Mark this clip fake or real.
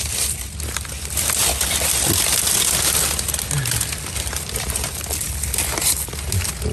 real